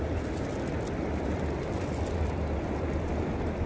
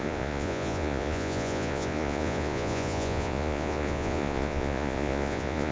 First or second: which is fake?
second